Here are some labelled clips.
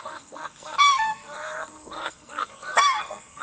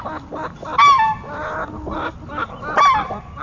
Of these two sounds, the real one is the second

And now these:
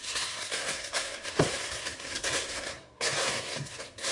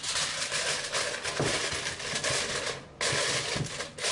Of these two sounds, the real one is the second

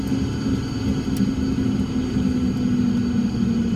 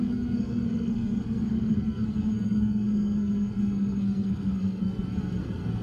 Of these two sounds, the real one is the first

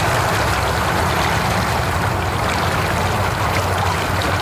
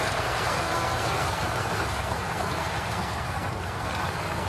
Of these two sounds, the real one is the first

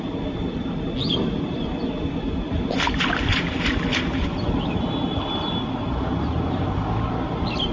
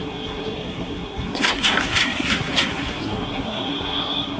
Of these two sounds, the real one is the first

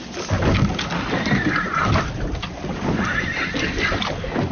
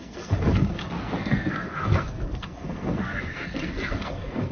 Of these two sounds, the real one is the first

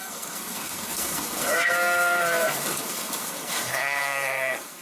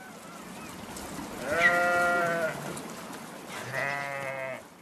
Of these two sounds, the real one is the second